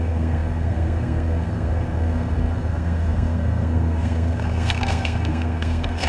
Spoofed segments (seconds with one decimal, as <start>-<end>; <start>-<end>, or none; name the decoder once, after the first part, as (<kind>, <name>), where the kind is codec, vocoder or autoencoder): 0.0-6.1 (codec, SNAC)